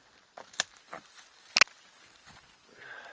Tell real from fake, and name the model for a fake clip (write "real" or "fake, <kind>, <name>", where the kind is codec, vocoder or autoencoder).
real